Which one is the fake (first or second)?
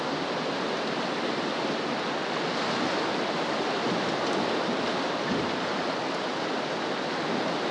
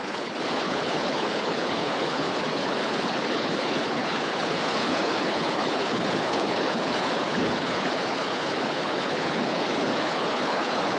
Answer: second